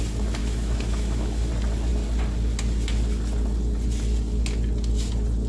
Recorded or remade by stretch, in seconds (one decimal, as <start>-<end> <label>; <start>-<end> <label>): 0.0-0.4 recorded; 0.4-1.5 remade; 1.5-5.5 recorded